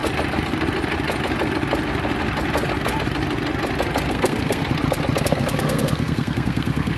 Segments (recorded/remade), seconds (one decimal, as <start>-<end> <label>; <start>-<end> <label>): 0.0-4.1 recorded; 4.1-4.6 remade; 4.6-5.2 recorded; 5.2-7.0 remade